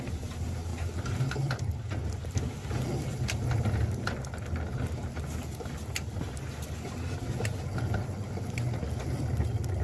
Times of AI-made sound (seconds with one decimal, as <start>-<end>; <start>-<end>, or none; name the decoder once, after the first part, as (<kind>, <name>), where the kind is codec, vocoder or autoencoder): none